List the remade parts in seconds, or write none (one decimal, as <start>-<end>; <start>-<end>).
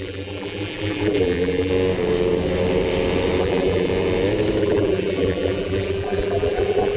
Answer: 0.0-1.7; 3.4-3.9; 4.6-7.0